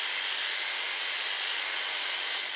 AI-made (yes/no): no